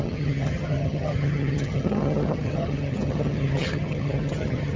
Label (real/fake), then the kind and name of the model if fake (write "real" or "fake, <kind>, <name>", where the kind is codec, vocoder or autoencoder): fake, vocoder, HiFi-GAN